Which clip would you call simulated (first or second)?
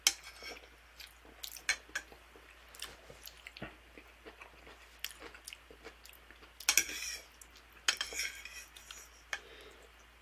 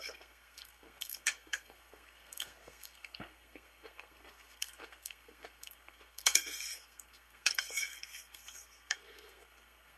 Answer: second